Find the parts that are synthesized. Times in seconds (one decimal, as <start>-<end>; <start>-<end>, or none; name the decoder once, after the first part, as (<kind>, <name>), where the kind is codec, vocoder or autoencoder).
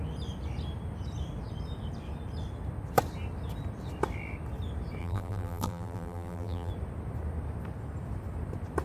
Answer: 5.0-6.7 (vocoder, BigVGAN v2)